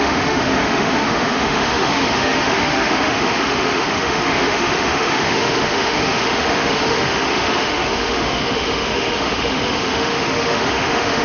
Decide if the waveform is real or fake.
fake